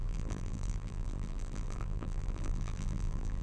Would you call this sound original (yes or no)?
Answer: no